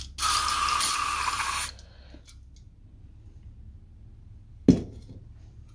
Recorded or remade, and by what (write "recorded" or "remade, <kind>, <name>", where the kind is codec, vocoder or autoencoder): recorded